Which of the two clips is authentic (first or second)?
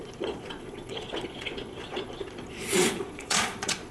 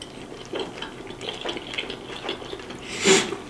second